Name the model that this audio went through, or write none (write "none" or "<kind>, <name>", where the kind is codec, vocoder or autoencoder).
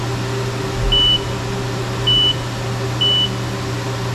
none